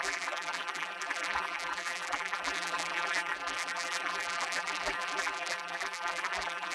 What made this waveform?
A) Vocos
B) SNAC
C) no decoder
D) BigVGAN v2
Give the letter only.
D